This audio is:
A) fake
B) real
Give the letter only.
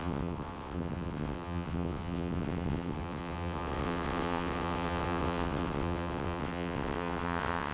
A